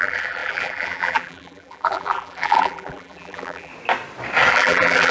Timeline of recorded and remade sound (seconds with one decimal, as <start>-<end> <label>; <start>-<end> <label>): 0.0-3.7 remade; 3.7-4.5 recorded; 4.5-5.1 remade